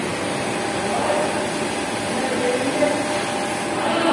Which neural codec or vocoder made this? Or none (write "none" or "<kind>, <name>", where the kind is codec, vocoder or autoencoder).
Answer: none